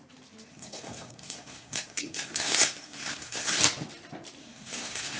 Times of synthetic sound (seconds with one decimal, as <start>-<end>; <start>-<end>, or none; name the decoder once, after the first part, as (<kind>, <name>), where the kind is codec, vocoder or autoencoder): 0.5-3.6 (codec, SNAC); 4.4-5.2